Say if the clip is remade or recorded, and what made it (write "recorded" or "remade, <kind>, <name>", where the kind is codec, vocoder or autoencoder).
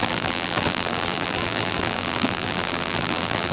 remade, vocoder, BigVGAN v2